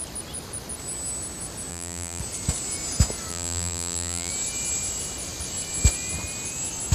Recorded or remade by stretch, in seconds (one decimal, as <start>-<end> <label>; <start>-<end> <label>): 0.0-1.7 recorded; 1.7-2.2 remade; 2.2-3.3 recorded; 3.3-4.3 remade; 4.3-6.9 recorded